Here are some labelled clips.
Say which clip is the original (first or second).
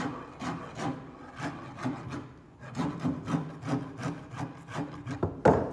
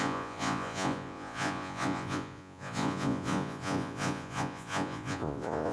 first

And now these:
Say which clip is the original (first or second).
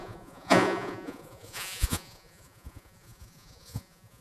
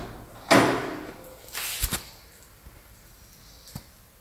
second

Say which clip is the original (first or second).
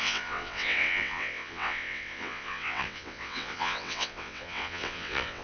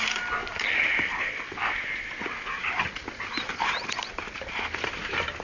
second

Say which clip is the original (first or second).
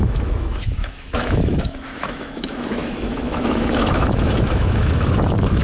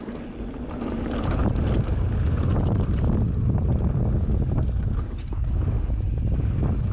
second